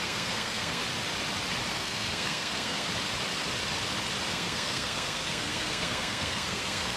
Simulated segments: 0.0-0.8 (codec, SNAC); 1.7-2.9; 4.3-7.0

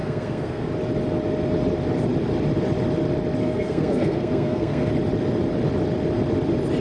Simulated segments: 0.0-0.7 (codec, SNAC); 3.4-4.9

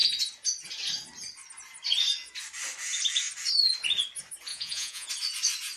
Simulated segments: 4.5-5.1 (vocoder, Vocos)